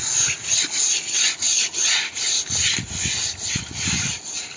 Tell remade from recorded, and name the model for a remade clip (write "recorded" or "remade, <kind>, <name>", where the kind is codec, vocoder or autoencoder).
recorded